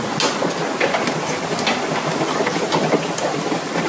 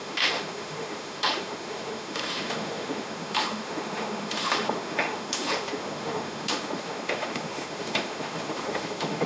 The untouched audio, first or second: first